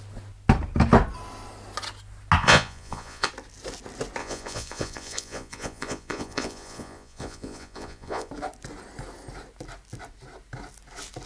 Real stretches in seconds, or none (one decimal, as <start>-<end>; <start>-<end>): 0.0-2.4; 3.3-4.2; 8.3-11.3